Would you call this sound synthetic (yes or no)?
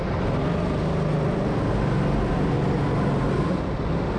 no